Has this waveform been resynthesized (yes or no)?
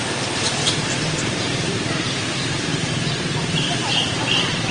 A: yes